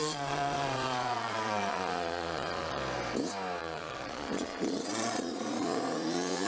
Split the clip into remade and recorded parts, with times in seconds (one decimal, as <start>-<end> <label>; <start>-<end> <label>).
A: 0.0-2.8 remade; 2.8-3.6 recorded; 3.6-6.5 remade